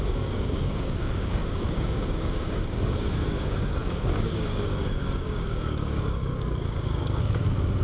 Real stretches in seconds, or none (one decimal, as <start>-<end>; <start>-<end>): none